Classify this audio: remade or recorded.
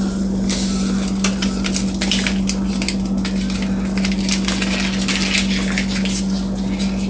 recorded